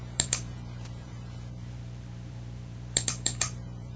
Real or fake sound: fake